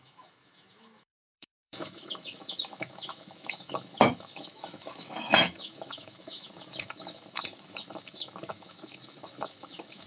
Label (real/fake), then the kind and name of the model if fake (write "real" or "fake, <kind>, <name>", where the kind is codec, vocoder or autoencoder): fake, autoencoder, DAC-VAE